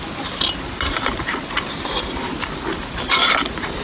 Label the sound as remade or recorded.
recorded